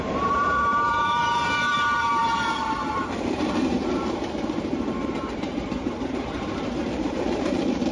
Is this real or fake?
fake